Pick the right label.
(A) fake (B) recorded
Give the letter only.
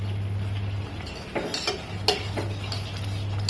B